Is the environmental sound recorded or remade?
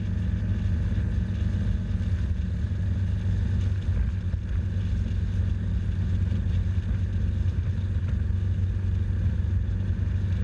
recorded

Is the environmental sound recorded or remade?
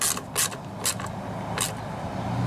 recorded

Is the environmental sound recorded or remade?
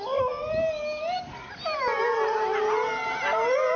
recorded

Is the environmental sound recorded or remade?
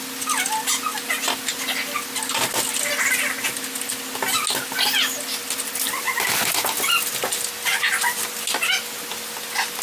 recorded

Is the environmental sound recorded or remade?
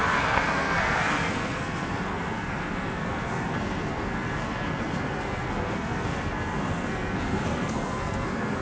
remade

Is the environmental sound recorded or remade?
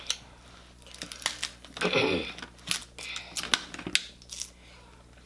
recorded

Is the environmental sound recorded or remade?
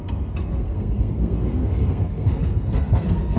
remade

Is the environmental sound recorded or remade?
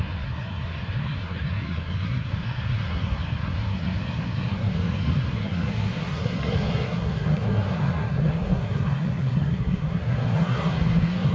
remade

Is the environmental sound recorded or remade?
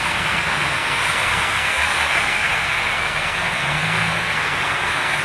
remade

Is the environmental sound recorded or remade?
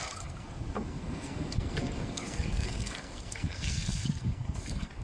remade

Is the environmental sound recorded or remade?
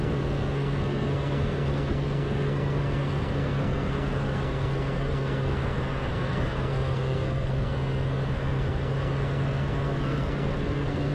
remade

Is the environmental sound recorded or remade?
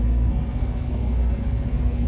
remade